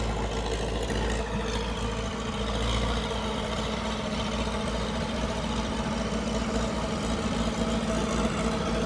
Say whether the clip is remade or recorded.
recorded